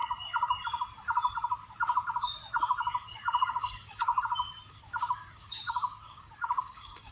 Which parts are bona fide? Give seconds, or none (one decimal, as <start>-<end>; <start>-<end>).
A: 0.0-3.1; 4.1-4.7